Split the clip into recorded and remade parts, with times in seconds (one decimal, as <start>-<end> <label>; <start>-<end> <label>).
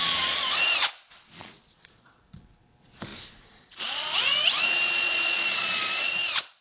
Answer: 0.0-6.6 remade